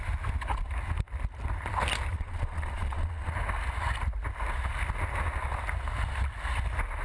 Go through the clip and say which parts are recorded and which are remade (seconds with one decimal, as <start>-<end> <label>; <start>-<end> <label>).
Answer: 0.0-2.1 recorded; 2.1-3.3 remade; 3.3-7.0 recorded